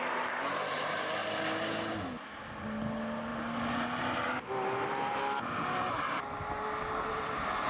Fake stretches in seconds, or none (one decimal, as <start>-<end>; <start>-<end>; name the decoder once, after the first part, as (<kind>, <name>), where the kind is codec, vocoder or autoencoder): none

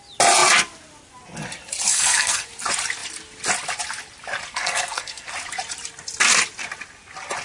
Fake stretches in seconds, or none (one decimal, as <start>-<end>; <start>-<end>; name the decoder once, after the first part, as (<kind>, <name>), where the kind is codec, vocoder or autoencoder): 1.9-2.5 (codec, SNAC); 4.5-5.3